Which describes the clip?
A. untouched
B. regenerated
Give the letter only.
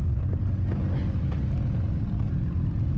A